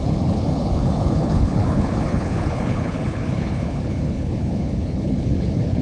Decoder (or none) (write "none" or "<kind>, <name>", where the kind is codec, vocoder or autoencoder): codec, HILCodec